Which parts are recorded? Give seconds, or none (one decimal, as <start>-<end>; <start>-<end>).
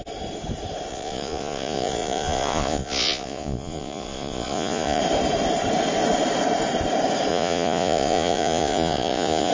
0.0-0.9; 5.0-7.3